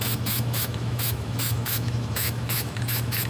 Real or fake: fake